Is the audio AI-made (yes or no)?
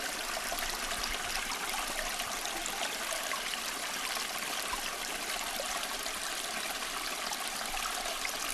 no